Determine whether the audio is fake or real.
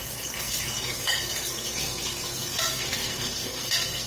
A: fake